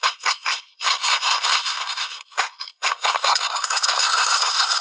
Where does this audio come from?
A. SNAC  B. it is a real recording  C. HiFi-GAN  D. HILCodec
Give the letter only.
A